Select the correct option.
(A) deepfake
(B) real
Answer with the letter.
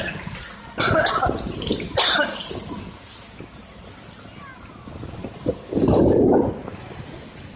B